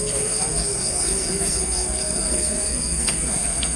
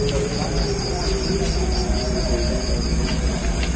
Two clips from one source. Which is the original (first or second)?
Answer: second